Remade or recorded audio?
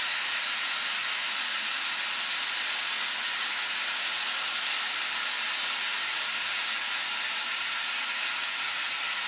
recorded